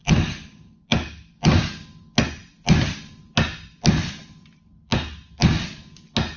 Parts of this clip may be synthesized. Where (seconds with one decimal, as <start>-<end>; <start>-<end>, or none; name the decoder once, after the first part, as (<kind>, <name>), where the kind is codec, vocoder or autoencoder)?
2.4-3.1 (vocoder, BigVGAN v2)